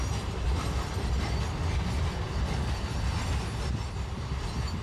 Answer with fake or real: real